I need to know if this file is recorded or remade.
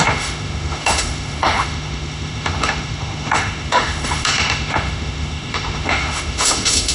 remade